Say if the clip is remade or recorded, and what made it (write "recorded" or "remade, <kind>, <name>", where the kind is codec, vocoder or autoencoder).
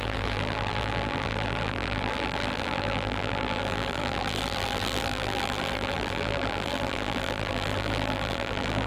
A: remade, vocoder, BigVGAN v2